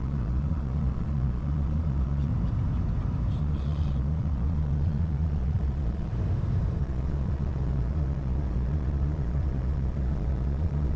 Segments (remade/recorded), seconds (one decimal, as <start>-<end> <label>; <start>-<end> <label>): 0.0-2.3 remade; 2.3-3.4 recorded; 3.4-6.1 remade; 6.1-6.8 recorded; 6.8-11.0 remade